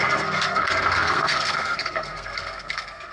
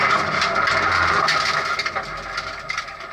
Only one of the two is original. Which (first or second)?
second